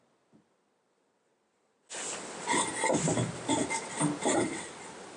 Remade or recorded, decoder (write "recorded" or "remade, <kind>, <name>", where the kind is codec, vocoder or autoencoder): recorded